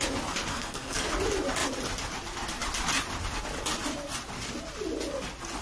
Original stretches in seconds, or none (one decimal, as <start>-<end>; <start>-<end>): 0.0-0.5; 1.1-5.6

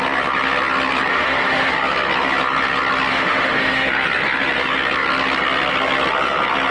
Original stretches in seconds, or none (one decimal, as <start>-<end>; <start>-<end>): 0.0-1.1; 1.7-3.1; 3.9-6.7

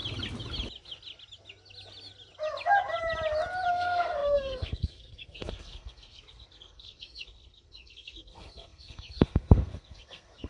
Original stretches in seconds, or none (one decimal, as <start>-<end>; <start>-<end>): 0.0-3.7

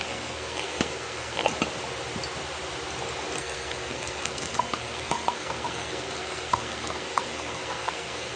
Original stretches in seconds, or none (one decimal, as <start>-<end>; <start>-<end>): 1.5-3.4

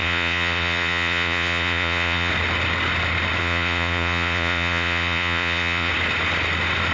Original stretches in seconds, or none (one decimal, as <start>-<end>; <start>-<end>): 2.3-3.4; 5.9-6.9

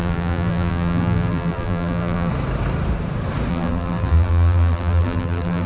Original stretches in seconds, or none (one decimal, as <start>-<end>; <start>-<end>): 2.3-3.5